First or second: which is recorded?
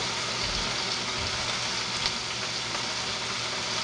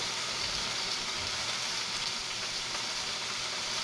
first